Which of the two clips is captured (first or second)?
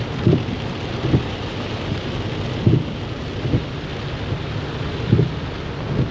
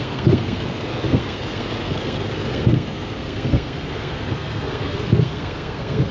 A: first